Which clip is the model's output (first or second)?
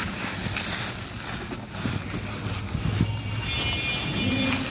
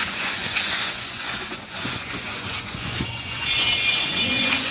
second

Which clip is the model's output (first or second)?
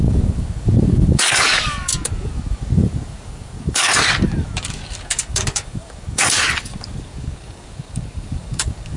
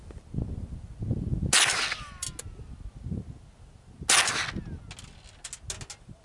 first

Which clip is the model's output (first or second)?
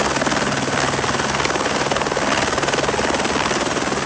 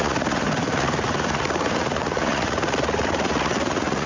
second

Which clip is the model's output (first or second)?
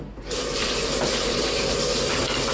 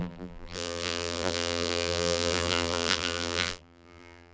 second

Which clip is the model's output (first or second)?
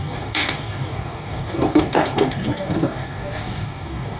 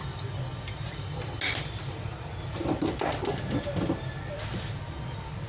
first